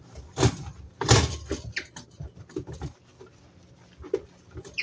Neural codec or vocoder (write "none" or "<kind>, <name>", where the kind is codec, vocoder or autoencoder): none